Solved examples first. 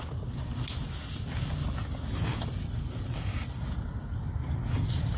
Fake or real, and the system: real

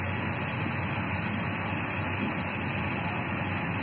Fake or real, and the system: real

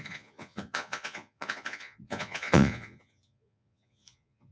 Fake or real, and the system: fake, vocoder, Vocos